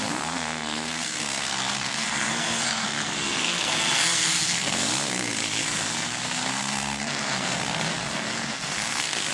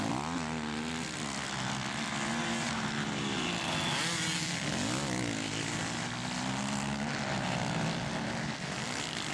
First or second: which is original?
second